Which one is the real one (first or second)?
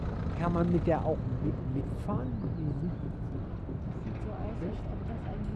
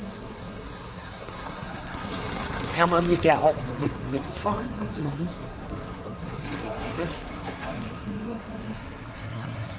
first